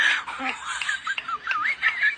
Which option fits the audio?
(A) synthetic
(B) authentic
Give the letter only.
B